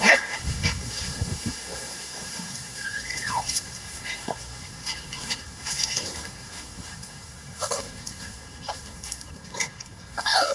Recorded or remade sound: remade